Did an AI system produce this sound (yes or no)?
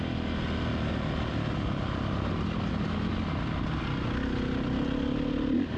no